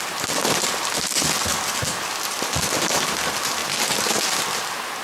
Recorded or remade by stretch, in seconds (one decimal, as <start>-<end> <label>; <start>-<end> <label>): 0.0-5.0 recorded